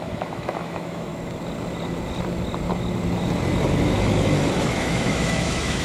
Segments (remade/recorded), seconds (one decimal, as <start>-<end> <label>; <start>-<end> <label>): 0.0-1.1 remade; 1.1-4.6 recorded; 4.6-5.8 remade